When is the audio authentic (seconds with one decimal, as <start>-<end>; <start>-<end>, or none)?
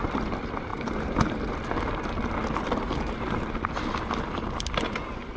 0.0-5.4